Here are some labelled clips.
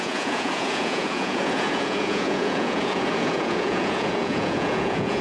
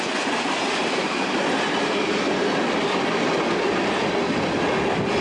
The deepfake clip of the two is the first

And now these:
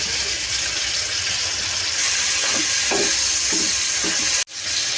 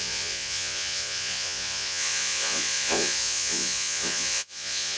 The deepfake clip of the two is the second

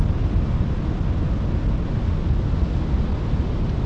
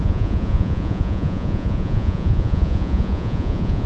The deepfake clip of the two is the second